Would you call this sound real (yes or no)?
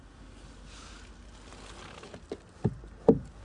yes